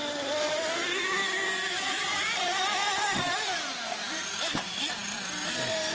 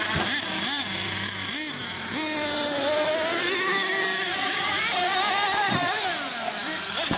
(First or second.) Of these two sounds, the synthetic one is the first